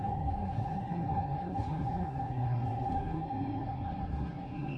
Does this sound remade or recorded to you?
remade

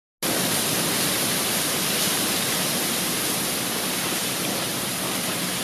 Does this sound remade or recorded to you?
recorded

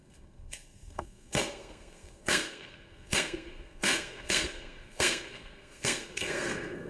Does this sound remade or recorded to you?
remade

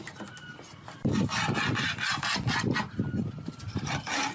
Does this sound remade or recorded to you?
recorded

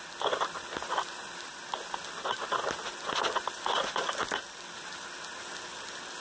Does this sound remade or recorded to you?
recorded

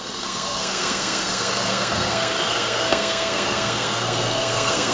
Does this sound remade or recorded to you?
remade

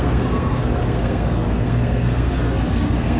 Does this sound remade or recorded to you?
remade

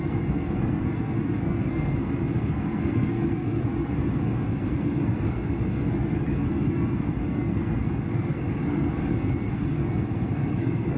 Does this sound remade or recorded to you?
remade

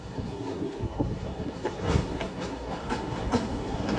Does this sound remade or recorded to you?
remade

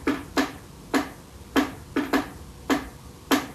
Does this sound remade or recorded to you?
recorded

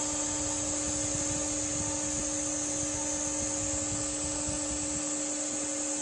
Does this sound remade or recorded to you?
recorded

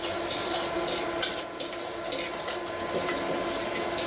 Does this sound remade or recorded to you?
recorded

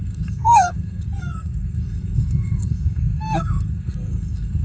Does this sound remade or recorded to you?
remade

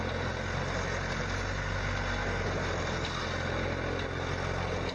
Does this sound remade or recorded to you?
recorded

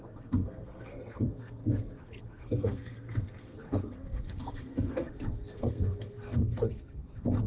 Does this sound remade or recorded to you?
remade